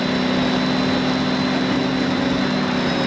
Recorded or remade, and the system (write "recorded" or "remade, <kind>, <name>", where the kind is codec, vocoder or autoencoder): recorded